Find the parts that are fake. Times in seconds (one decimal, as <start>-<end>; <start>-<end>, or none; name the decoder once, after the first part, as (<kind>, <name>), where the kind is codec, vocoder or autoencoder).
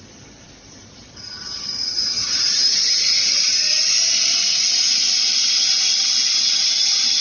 0.0-2.6 (vocoder, BigVGAN v2); 3.3-3.7; 6.8-7.2